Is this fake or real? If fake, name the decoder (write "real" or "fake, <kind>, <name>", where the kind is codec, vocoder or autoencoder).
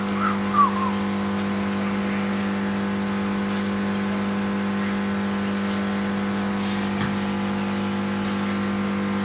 real